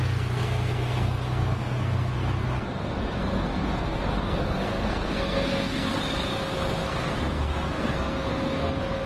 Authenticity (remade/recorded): remade